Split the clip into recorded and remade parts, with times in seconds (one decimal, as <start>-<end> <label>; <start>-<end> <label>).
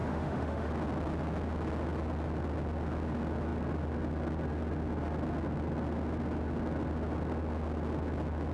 0.0-0.7 remade; 0.7-8.5 recorded